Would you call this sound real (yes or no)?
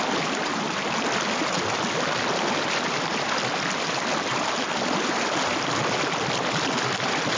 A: yes